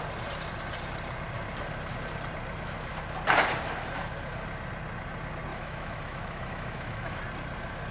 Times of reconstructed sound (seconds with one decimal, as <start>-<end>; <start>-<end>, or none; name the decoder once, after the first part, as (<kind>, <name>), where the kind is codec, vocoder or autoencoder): 5.5-7.2 (autoencoder, DAC-VAE)